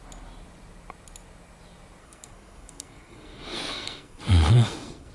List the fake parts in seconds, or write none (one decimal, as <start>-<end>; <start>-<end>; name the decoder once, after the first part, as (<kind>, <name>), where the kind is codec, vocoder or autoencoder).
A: 2.0-5.1 (codec, SNAC)